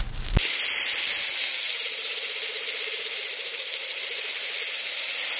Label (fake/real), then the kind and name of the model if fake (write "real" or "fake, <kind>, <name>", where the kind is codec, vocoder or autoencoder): real